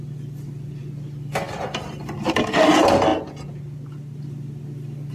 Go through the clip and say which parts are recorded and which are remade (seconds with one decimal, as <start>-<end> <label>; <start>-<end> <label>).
0.0-5.1 recorded